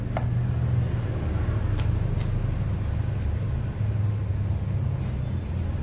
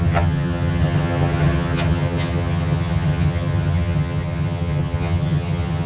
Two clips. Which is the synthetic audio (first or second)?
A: second